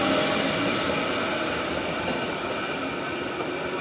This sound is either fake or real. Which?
real